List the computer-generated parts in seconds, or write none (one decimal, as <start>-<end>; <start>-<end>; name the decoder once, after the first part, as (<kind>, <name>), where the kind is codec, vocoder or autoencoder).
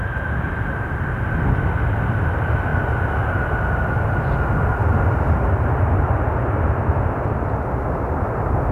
none